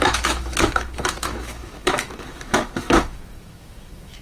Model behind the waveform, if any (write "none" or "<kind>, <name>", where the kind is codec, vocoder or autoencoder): autoencoder, DAC-VAE